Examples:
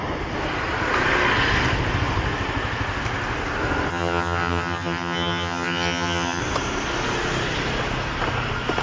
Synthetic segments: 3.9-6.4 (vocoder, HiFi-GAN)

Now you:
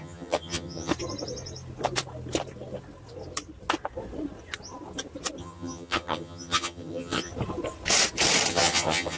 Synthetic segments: 0.0-0.9 (vocoder, HiFi-GAN); 5.4-7.3; 8.5-9.2

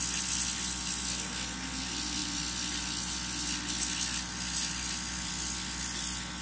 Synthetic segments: none

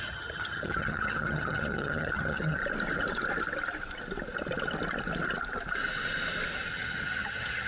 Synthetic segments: 0.0-2.6 (vocoder, HiFi-GAN); 6.7-7.7

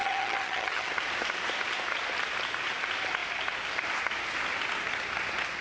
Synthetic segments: 0.0-0.9 (vocoder, HiFi-GAN)